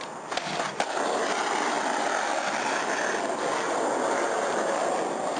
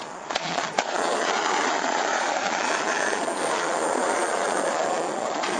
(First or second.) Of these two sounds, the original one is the first